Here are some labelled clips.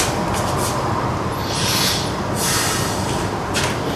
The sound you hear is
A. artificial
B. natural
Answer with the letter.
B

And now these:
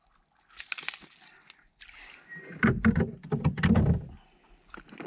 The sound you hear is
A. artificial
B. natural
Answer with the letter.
B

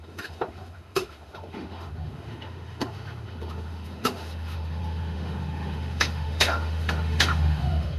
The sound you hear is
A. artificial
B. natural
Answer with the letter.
A